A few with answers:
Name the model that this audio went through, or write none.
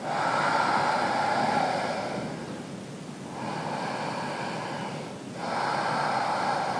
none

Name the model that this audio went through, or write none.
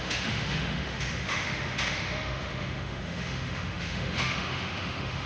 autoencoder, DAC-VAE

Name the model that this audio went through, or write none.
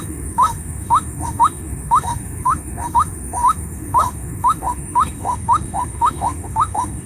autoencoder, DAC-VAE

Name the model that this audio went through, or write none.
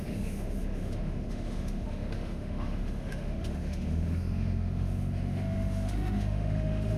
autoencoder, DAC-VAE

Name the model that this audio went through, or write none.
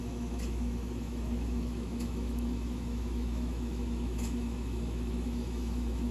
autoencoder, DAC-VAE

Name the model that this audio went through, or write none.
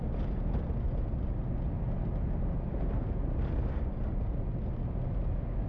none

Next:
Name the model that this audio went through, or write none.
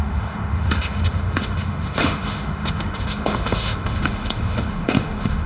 autoencoder, DAC-VAE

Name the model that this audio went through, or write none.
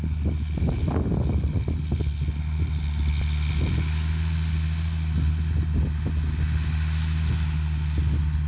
none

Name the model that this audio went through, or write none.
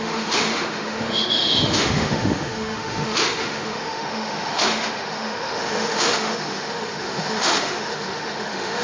autoencoder, DAC-VAE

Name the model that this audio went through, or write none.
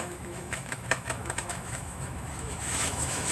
autoencoder, DAC-VAE